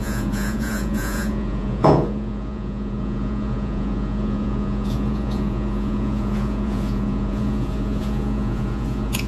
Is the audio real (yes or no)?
no